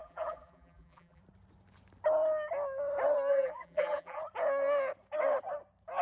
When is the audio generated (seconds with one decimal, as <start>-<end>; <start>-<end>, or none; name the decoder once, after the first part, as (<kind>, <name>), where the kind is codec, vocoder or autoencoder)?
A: 0.0-1.2 (vocoder, BigVGAN v2); 3.3-4.2